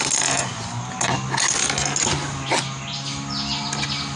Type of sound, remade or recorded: recorded